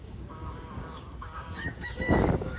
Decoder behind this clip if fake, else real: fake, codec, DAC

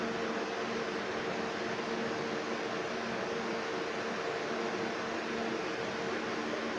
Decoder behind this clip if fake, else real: real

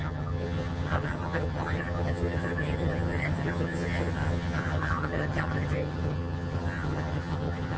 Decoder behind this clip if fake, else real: fake, vocoder, HiFi-GAN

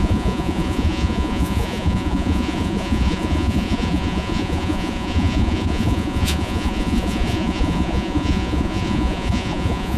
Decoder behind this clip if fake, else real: fake, vocoder, Vocos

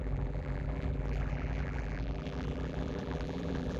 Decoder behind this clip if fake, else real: fake, vocoder, BigVGAN v2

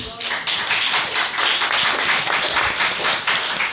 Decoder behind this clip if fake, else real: real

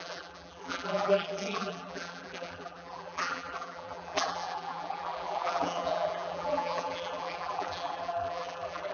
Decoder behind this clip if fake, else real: fake, vocoder, BigVGAN v2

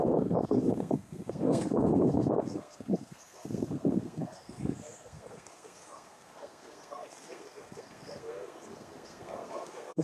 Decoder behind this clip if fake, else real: fake, codec, SNAC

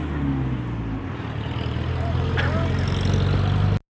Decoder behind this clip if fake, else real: real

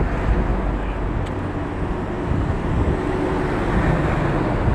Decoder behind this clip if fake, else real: real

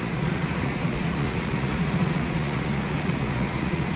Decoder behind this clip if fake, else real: fake, vocoder, Vocos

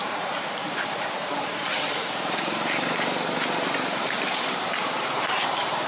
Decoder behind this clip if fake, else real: fake, vocoder, BigVGAN v2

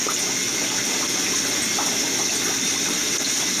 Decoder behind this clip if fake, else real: real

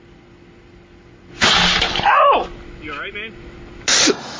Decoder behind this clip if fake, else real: real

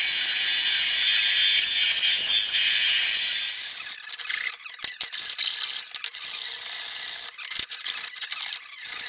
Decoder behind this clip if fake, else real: real